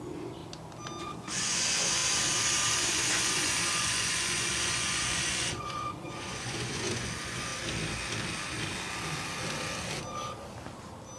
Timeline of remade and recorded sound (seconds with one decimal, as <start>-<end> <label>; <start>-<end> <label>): 0.0-0.4 remade; 0.4-1.0 recorded; 1.0-2.0 remade; 2.0-2.7 recorded; 2.7-7.5 remade; 7.5-11.2 recorded